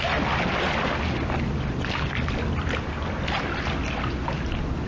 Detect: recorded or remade recorded